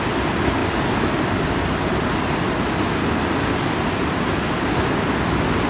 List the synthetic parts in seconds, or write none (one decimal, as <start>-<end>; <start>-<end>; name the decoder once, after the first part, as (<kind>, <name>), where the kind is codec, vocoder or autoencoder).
none